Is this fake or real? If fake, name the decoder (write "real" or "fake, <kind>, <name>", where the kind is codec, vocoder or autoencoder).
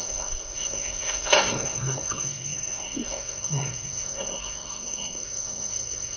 fake, codec, SNAC